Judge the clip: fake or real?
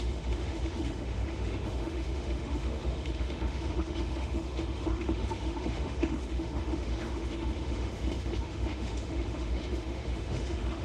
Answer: fake